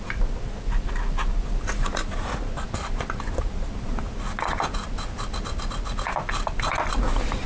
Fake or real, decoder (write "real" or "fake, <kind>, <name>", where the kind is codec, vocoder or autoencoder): real